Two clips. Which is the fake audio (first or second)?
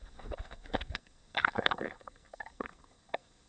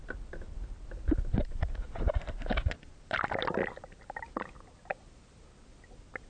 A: first